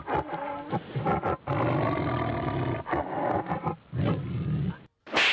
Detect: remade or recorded recorded